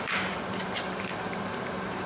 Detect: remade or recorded remade